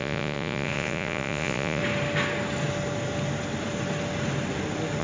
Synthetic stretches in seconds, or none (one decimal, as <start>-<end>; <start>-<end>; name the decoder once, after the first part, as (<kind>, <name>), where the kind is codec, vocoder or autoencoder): 0.0-1.8 (vocoder, Vocos)